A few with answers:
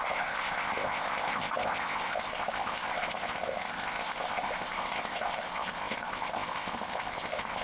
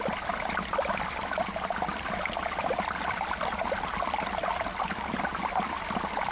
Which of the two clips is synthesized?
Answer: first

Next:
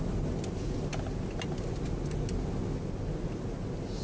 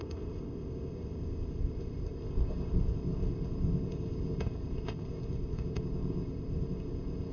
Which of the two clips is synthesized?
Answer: second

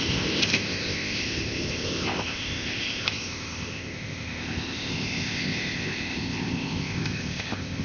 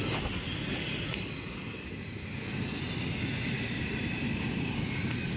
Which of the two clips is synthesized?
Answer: first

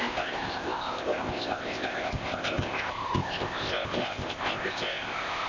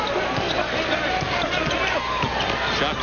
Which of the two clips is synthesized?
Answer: first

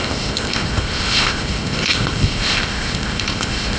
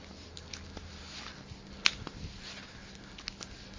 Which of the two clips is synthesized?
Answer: first